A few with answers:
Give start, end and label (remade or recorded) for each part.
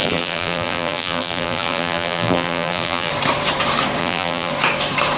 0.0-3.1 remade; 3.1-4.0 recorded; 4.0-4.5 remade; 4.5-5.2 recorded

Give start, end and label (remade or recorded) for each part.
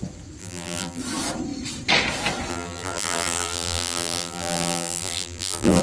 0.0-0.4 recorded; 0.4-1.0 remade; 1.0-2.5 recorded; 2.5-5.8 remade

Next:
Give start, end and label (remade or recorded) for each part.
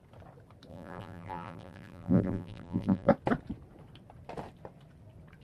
0.0-0.7 recorded; 0.7-3.1 remade; 3.1-5.4 recorded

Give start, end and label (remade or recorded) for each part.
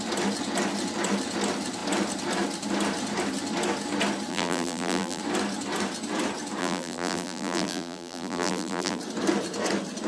0.0-4.3 recorded; 4.3-5.2 remade; 5.2-6.6 recorded; 6.6-9.0 remade; 9.0-10.1 recorded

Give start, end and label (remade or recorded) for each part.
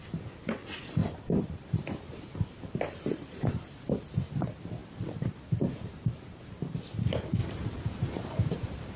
0.0-1.0 recorded; 1.0-3.8 remade; 3.8-4.8 recorded; 4.8-6.8 remade; 6.8-7.4 recorded; 7.4-9.0 remade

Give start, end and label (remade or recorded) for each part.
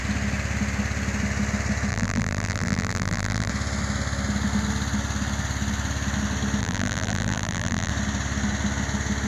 0.0-1.9 recorded; 1.9-3.5 remade; 3.5-6.6 recorded; 6.6-7.9 remade; 7.9-9.3 recorded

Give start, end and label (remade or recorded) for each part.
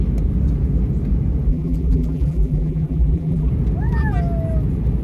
0.0-1.5 recorded; 1.5-3.5 remade; 3.5-5.0 recorded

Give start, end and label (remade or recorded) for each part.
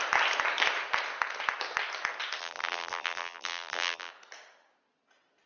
0.0-2.4 recorded; 2.4-4.1 remade; 4.1-5.5 recorded